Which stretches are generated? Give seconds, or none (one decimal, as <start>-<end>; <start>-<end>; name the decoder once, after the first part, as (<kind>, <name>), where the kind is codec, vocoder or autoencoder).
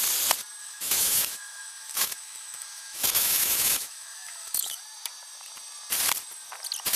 0.6-4.8 (autoencoder, DAC-VAE)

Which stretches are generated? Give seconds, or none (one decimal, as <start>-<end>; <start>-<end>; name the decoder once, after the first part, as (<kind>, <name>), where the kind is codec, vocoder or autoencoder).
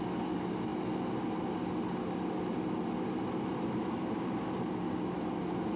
none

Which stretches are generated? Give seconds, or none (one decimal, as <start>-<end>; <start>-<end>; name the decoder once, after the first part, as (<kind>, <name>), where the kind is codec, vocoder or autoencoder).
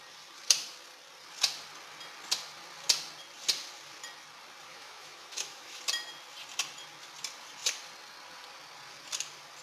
4.7-5.8 (autoencoder, DAC-VAE)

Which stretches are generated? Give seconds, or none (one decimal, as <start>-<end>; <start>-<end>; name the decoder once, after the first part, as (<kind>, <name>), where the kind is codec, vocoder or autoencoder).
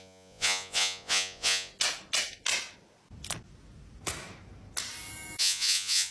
0.0-1.7 (vocoder, Vocos); 5.4-6.1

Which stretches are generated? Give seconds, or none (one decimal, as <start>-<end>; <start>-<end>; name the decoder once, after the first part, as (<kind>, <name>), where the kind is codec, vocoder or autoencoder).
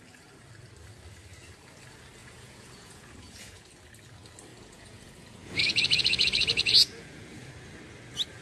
2.2-3.7 (vocoder, Vocos); 4.5-7.5